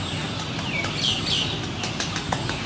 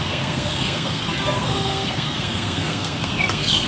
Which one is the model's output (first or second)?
second